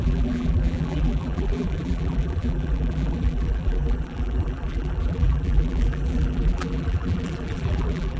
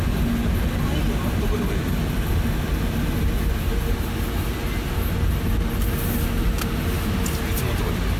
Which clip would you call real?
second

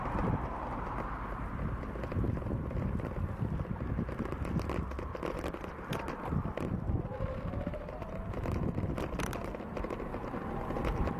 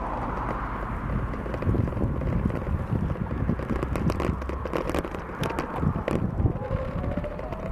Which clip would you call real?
second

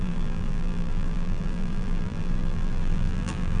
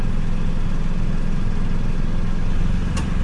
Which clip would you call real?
second